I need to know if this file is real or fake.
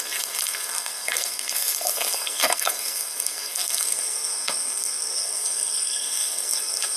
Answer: fake